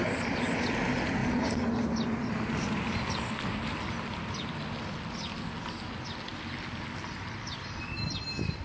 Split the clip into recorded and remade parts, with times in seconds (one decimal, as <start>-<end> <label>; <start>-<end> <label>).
0.0-8.6 recorded